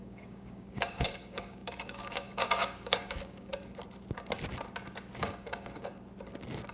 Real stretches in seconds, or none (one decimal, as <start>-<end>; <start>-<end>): 3.5-5.2; 5.9-6.7